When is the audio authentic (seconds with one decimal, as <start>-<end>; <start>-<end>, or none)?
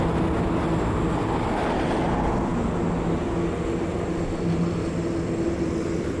0.0-6.2